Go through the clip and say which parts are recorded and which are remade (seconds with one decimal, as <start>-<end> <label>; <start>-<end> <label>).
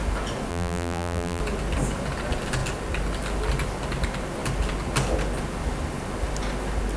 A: 0.0-0.5 recorded; 0.5-1.4 remade; 1.4-7.0 recorded